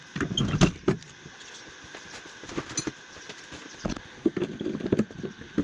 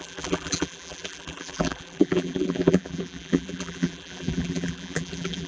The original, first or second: first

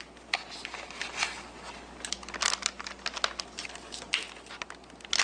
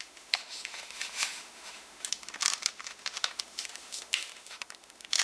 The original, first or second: first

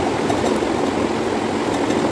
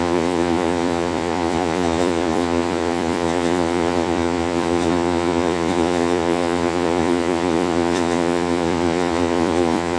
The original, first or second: first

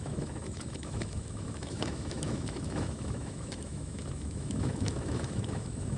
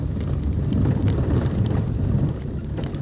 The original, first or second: second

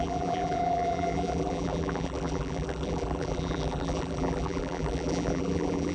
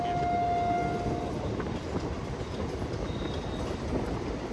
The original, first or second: second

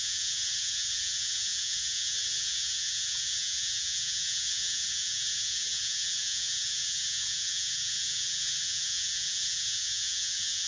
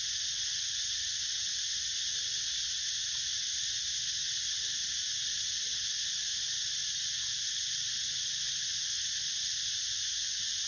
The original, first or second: second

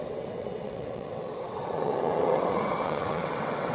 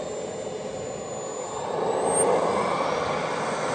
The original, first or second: second